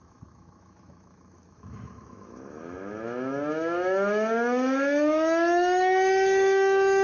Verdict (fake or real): fake